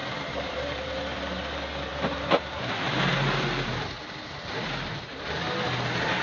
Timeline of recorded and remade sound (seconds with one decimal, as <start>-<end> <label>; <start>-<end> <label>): 0.0-1.0 remade; 1.0-1.9 recorded; 1.9-3.1 remade; 3.1-6.2 recorded